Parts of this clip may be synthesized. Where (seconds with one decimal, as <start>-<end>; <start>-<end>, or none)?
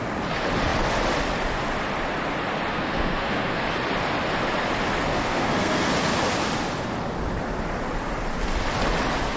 2.7-3.6; 5.1-5.9